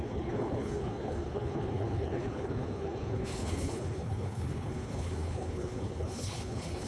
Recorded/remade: remade